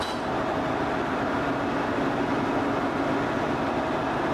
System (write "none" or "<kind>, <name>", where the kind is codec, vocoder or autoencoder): none